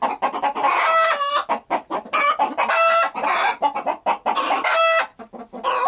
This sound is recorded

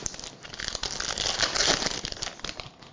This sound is recorded